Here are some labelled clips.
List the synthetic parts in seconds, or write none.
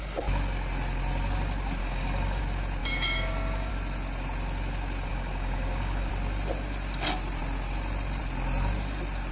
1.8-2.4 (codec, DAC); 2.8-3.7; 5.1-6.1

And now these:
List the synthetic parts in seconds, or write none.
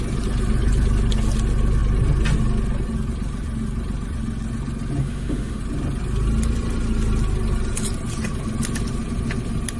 5.0-5.6 (autoencoder, DAC-VAE)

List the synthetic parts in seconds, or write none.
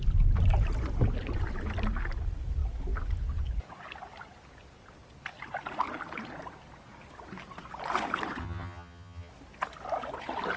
8.4-9.3 (vocoder, HiFi-GAN)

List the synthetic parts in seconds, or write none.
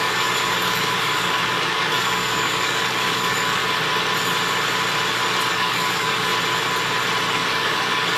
0.0-3.6 (codec, DAC); 5.5-6.3; 7.3-8.2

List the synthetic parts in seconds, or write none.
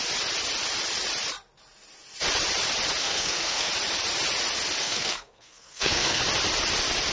3.0-3.7 (codec, SNAC); 4.8-6.2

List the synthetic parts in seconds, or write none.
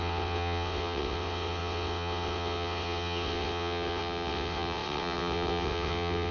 0.0-6.3 (vocoder, WaveNeXt)